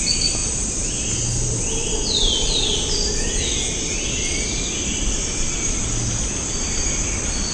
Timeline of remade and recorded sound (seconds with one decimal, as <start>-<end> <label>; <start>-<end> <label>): 0.0-7.5 recorded